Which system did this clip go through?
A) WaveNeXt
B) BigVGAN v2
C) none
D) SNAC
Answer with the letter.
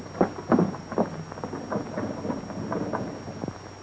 C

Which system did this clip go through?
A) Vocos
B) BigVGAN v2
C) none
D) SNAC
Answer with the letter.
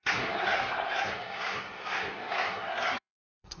D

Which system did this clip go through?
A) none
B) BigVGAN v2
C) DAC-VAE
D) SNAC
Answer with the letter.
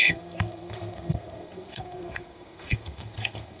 D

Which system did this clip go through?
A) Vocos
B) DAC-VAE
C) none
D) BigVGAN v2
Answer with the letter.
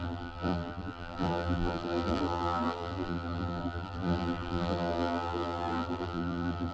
D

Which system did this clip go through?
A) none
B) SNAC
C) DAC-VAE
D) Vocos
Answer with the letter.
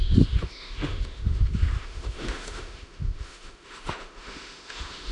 C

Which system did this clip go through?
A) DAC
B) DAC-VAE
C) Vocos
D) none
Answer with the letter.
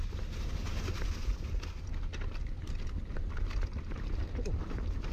D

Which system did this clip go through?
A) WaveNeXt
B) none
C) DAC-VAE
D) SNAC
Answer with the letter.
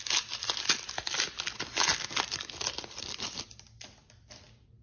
B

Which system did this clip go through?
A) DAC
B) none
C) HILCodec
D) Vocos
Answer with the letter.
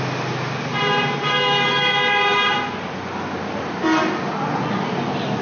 B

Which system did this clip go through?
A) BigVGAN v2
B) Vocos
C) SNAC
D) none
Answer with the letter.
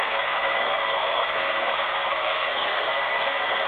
C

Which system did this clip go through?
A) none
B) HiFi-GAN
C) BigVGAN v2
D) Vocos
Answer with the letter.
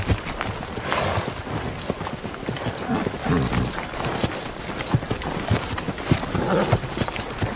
A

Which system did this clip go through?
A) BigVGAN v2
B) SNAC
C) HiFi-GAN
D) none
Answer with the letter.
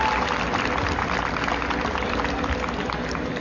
D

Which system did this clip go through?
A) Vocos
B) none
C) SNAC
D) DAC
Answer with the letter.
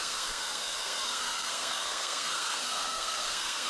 C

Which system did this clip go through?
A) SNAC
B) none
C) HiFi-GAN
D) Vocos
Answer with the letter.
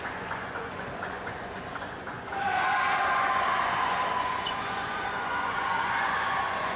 D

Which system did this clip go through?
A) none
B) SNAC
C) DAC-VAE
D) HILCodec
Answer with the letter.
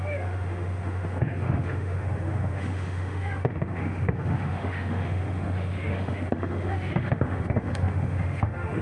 C